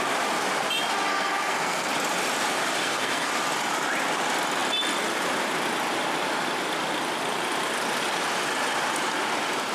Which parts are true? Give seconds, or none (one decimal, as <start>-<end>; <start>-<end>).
0.0-1.1; 1.9-2.8; 3.3-9.7